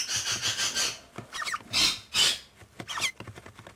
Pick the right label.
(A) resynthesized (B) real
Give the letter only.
B